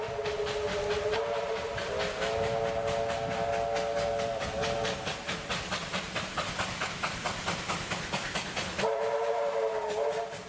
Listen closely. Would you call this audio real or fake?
real